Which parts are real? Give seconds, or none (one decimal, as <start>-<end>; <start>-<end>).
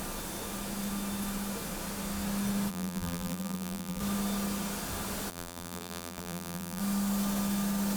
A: 0.0-2.7; 4.0-5.3; 6.8-8.0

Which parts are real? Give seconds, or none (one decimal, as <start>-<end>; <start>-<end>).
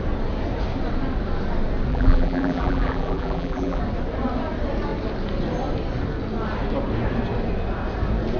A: 0.0-1.9; 3.8-8.4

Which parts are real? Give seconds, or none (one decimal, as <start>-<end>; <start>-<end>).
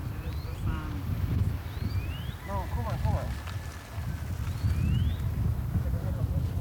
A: 2.1-6.6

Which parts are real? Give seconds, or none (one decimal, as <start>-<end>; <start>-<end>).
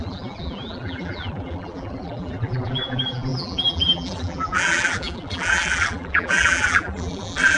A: none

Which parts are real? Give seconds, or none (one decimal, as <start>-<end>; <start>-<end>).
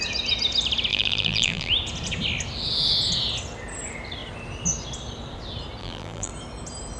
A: 0.0-0.9; 1.7-5.8; 6.3-7.0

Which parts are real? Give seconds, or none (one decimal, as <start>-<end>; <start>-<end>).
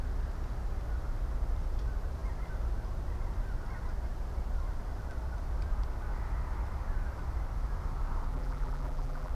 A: 0.0-8.3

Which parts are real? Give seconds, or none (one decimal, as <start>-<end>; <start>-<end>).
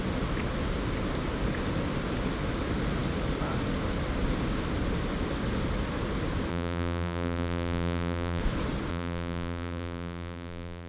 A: 0.0-6.5; 8.4-8.9